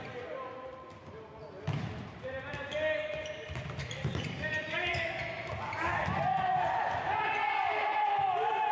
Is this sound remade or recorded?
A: recorded